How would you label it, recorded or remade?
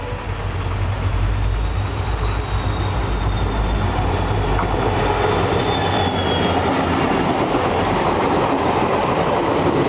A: recorded